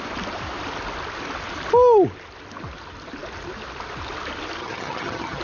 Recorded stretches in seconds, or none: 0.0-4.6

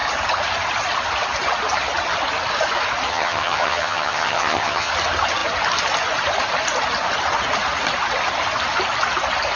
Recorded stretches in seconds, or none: 0.0-3.1; 4.9-9.6

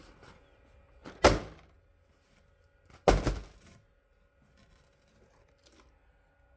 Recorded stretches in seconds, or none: 0.0-6.6

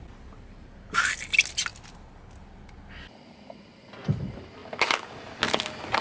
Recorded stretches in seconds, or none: 0.0-6.0

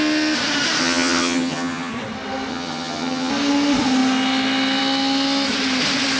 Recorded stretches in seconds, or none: 0.0-0.8; 1.9-2.5; 3.3-6.2

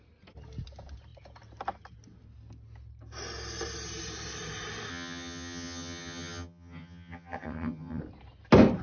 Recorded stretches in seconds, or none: 0.0-4.9; 8.0-8.8

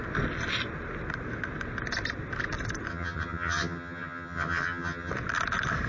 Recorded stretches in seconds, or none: 0.0-2.9; 5.1-5.9

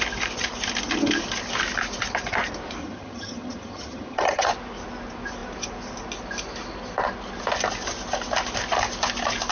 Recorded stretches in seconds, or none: 0.0-2.8; 4.5-9.5